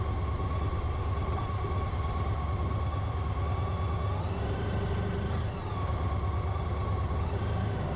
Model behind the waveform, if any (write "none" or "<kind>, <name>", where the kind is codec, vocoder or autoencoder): none